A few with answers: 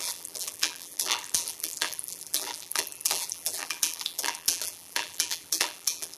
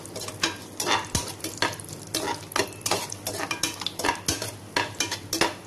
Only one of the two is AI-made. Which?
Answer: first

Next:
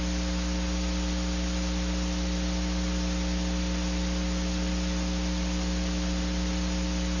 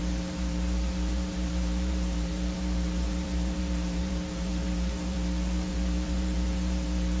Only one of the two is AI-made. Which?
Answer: second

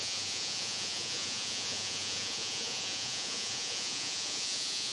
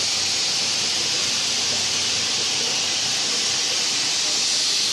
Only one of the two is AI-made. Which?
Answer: first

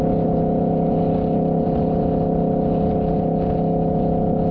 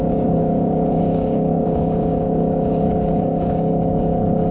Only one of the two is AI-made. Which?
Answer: second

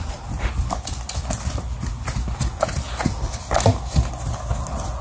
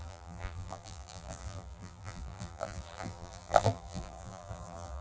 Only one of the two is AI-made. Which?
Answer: second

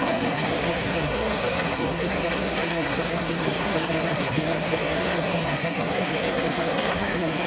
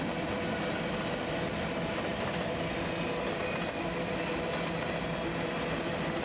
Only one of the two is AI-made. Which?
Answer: first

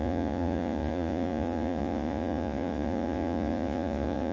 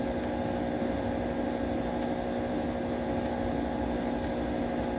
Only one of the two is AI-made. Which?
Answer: first